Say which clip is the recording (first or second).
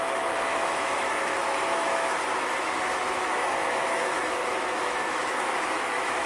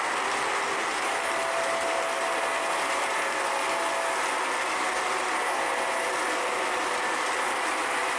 second